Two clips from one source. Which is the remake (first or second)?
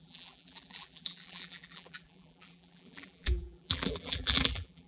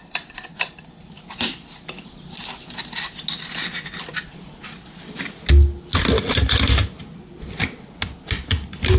first